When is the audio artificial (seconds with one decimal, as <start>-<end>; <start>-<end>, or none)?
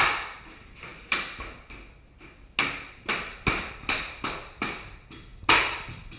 none